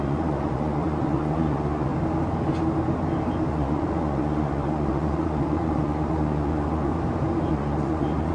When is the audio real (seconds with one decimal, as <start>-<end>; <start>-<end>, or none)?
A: 1.9-3.5; 6.9-7.5